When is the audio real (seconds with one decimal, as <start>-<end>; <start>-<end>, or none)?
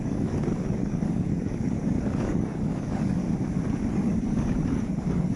3.2-3.9